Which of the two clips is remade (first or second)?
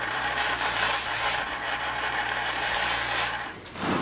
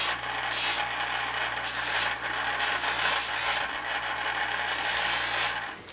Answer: first